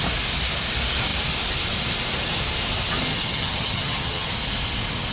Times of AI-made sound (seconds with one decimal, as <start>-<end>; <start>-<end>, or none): 3.1-4.3